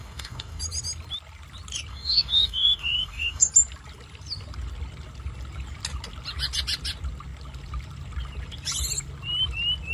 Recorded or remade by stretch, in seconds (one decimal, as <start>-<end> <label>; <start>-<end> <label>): 0.0-0.6 remade; 0.6-1.9 recorded; 1.9-3.5 remade; 3.5-9.9 recorded